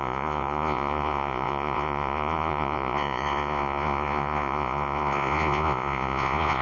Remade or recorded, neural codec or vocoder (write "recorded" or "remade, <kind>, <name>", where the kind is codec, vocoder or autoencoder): remade, vocoder, Vocos